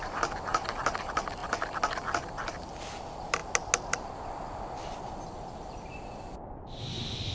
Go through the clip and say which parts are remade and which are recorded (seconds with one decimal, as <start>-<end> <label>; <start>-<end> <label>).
0.0-7.3 recorded